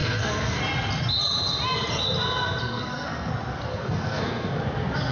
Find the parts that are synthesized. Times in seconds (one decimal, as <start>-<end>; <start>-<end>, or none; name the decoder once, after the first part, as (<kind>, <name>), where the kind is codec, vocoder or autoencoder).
0.0-0.6 (codec, SNAC); 2.6-3.3; 3.7-4.6